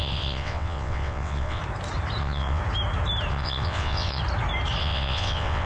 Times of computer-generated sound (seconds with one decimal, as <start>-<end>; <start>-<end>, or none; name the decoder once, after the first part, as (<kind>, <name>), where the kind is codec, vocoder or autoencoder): 0.0-1.6 (vocoder, WaveNeXt); 2.2-2.6; 3.3-4.2; 4.8-5.7

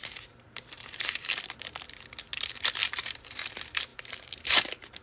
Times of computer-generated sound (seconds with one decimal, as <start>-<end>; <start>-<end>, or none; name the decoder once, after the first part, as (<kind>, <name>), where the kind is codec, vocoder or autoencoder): 0.0-1.7 (vocoder, BigVGAN v2); 2.8-3.5; 3.9-4.4

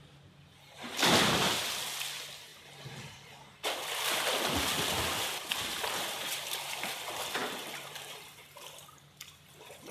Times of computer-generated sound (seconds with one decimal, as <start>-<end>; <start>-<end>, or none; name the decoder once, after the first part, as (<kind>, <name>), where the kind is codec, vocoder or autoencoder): 7.4-9.9 (vocoder, BigVGAN v2)

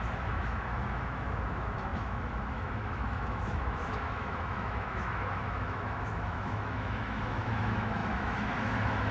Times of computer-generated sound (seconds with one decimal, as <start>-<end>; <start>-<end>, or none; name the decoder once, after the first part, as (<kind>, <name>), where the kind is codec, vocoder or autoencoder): 0.0-9.1 (autoencoder, DAC-VAE)

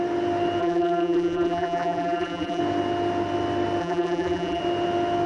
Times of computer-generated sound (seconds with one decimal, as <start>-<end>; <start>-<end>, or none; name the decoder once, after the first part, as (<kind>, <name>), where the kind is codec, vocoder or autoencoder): 0.6-2.6 (vocoder, BigVGAN v2); 3.8-4.6